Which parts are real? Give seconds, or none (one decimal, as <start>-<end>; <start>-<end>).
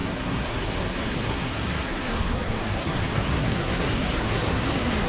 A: none